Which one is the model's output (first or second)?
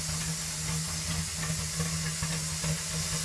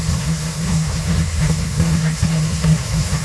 second